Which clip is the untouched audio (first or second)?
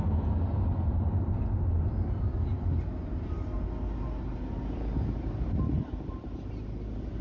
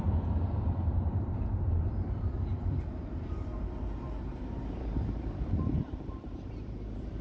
first